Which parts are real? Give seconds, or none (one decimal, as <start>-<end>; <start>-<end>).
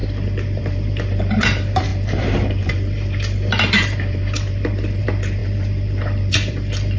0.0-0.6